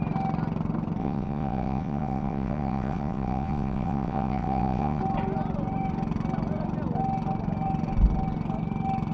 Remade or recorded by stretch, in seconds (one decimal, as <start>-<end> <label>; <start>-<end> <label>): 0.0-1.0 recorded; 1.0-5.0 remade; 5.0-9.1 recorded